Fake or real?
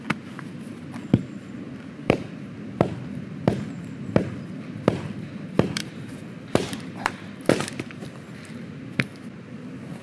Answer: fake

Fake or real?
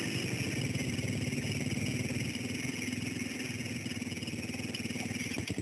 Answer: real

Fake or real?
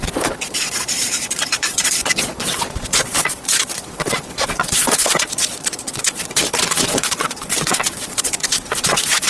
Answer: fake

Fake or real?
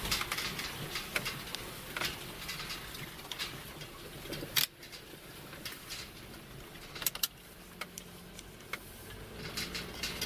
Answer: real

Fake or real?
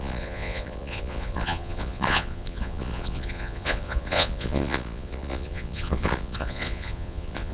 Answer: fake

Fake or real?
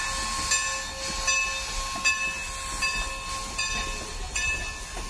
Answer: real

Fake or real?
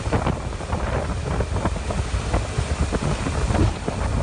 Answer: real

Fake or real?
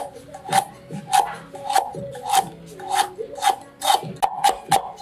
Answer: real